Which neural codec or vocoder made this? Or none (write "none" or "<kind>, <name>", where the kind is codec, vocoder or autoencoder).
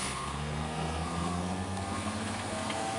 codec, SNAC